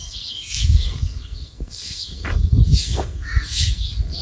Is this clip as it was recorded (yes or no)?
no